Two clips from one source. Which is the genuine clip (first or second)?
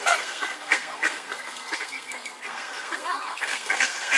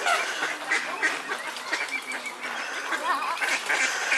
second